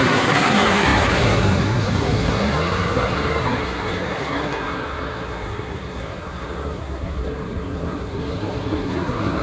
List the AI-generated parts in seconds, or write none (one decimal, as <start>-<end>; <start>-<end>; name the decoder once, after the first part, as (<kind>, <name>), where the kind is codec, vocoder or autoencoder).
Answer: 0.0-9.4 (codec, SNAC)